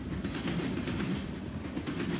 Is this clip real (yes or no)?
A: yes